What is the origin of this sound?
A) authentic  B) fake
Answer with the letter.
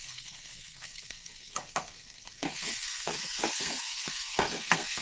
B